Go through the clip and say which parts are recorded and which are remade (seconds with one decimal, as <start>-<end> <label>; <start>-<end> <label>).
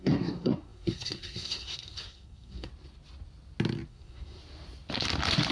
0.0-2.7 remade; 2.7-3.9 recorded; 3.9-4.4 remade; 4.4-5.5 recorded